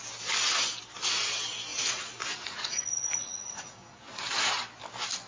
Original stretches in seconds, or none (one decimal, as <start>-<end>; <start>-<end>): 0.0-1.7; 4.5-5.3